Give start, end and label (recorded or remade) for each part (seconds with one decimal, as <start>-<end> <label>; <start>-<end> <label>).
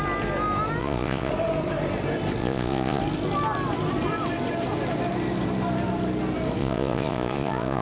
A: 0.0-0.8 recorded; 0.8-1.3 remade; 1.3-2.4 recorded; 2.4-3.0 remade; 3.0-6.6 recorded; 6.6-7.8 remade